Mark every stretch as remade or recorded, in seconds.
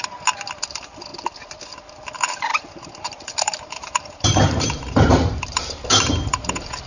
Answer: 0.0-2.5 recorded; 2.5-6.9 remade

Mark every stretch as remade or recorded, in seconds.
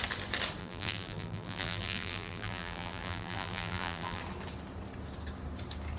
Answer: 0.0-0.6 recorded; 0.6-4.2 remade; 4.2-6.0 recorded